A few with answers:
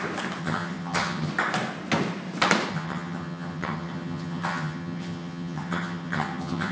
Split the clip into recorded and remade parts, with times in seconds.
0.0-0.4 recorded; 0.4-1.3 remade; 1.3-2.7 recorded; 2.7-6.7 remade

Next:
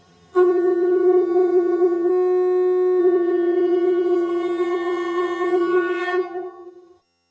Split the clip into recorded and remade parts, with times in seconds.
0.0-2.1 remade; 2.1-3.0 recorded; 3.0-7.3 remade